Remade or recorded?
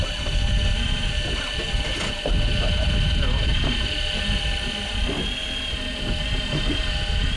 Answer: recorded